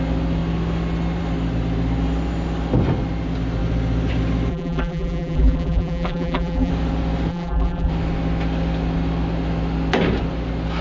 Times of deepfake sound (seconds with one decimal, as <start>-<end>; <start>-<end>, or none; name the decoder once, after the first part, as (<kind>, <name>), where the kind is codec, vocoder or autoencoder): 4.5-6.7 (vocoder, BigVGAN v2); 7.3-7.9